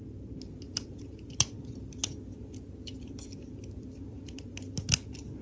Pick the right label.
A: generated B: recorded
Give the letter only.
B